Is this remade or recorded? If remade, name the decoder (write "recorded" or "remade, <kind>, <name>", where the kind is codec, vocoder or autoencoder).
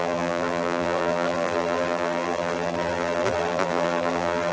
remade, vocoder, BigVGAN v2